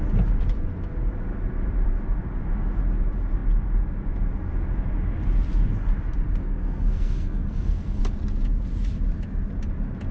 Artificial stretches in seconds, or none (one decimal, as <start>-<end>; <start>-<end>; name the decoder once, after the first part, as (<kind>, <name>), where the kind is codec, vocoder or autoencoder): 6.4-8.0 (codec, SNAC)